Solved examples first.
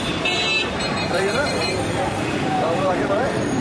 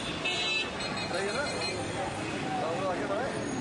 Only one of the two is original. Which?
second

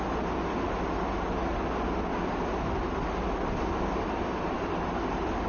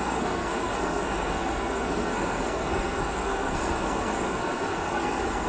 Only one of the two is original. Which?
first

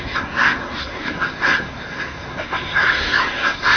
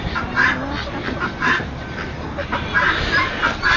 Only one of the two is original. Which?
second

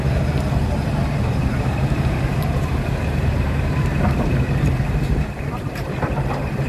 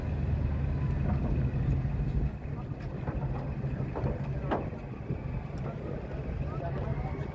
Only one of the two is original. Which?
second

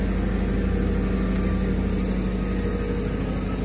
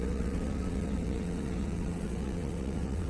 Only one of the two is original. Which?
first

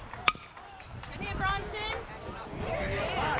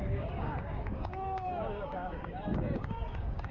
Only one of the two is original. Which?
first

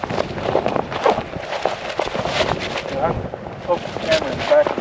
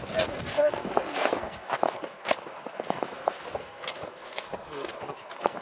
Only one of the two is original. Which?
first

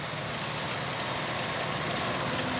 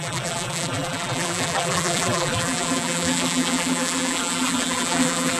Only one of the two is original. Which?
first